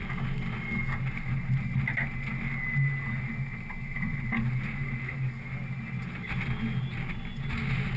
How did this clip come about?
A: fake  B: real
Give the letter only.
B